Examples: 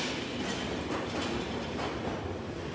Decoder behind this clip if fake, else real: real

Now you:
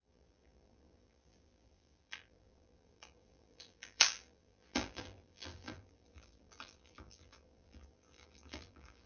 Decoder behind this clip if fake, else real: fake, vocoder, BigVGAN v2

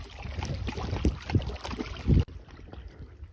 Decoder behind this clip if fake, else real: real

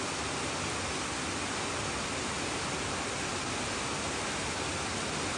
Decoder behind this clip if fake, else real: real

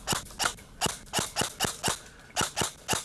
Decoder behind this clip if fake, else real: real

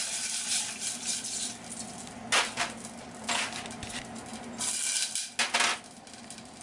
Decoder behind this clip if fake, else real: real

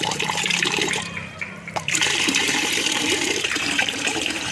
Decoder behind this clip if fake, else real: fake, vocoder, BigVGAN v2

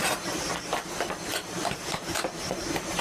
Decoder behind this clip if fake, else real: fake, vocoder, BigVGAN v2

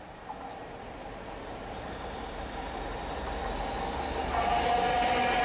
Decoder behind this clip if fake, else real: real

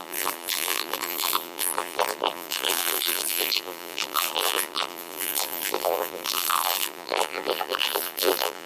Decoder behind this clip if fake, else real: fake, vocoder, BigVGAN v2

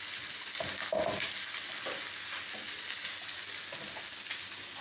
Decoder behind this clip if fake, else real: real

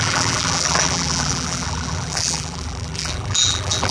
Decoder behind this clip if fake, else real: fake, vocoder, BigVGAN v2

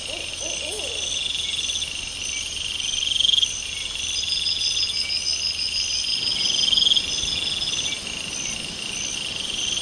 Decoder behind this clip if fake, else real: real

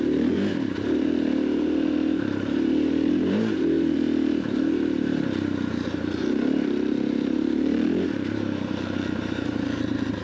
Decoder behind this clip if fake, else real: fake, vocoder, BigVGAN v2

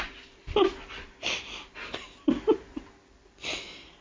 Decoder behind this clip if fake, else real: real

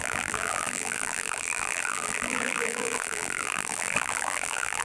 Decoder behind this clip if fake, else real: fake, vocoder, BigVGAN v2